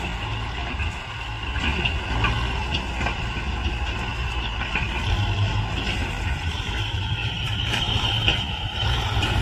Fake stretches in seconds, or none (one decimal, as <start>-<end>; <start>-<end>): 4.1-4.7; 5.5-9.4